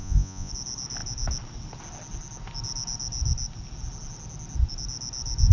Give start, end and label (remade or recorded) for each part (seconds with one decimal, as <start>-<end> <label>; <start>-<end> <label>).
0.0-0.5 remade; 0.5-5.5 recorded